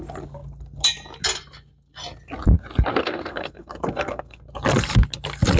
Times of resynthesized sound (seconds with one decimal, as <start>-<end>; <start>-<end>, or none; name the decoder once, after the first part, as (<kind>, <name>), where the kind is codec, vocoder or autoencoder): 2.9-4.4 (codec, SNAC)